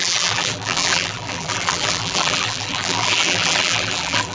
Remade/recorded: remade